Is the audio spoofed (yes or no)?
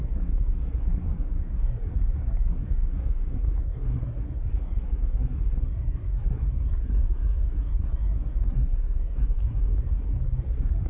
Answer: yes